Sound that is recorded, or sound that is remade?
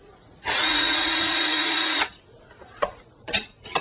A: remade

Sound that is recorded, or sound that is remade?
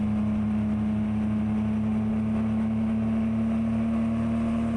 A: recorded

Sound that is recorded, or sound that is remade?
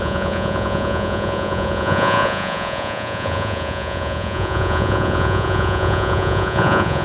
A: remade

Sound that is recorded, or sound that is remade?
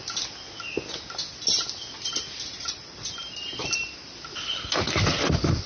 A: recorded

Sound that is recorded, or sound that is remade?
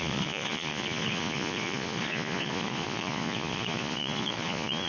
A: remade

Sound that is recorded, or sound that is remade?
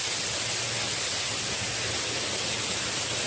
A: recorded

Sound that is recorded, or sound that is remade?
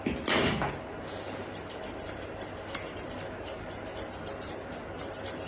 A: recorded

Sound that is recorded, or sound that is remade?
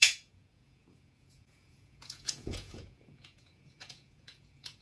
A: remade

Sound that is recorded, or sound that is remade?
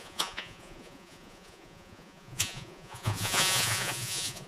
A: remade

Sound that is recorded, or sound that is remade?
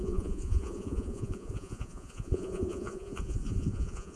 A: remade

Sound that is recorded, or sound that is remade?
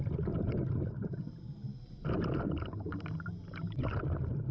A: recorded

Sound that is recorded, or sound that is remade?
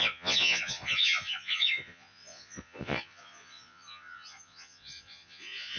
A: remade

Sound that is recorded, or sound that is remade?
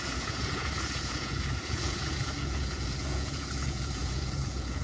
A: remade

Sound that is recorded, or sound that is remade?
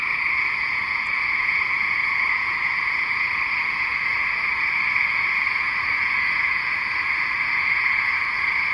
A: remade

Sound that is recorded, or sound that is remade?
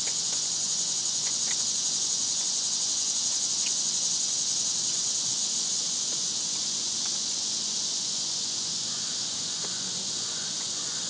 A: remade